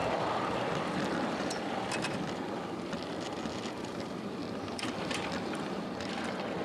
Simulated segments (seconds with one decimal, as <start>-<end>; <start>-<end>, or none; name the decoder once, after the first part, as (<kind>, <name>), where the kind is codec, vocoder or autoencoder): 4.4-6.6 (vocoder, BigVGAN v2)